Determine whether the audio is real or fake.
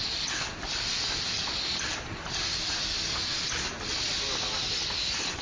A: real